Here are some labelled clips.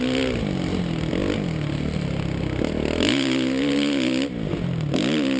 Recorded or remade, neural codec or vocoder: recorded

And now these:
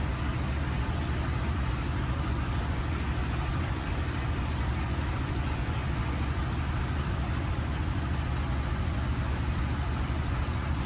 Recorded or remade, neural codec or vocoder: remade, vocoder, Vocos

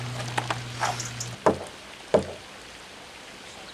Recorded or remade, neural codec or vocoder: recorded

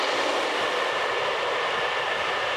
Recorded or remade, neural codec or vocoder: recorded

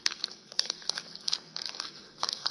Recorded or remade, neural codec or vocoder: remade, codec, SNAC